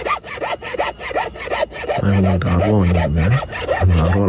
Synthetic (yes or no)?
no